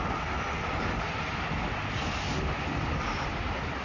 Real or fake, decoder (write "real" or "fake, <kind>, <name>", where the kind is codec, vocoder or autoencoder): real